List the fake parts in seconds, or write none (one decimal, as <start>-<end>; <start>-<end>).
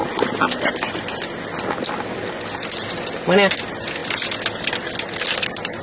none